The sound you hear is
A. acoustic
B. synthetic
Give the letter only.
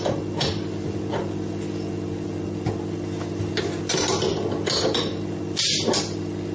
A